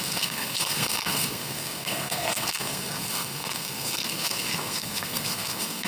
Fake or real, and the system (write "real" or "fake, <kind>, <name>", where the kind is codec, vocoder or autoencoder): fake, codec, SNAC